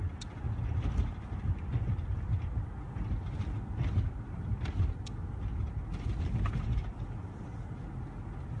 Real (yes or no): yes